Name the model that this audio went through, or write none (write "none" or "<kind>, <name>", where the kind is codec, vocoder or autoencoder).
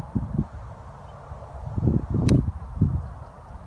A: none